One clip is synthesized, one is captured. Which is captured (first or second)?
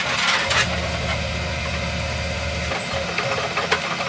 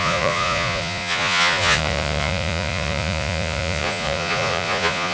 first